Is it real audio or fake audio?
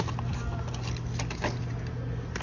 real